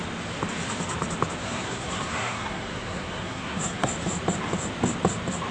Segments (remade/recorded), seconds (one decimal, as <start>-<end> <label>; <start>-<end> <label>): 0.0-1.4 recorded; 1.4-3.9 remade; 3.9-5.5 recorded